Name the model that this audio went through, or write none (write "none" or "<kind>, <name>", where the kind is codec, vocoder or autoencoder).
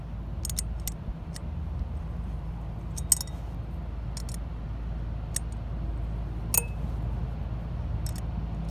none